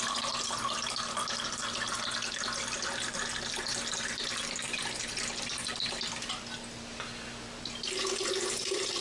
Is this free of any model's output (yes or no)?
yes